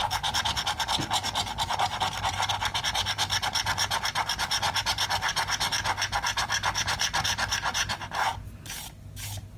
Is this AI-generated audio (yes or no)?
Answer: no